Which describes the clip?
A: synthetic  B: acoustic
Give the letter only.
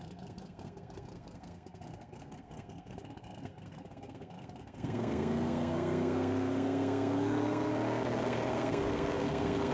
A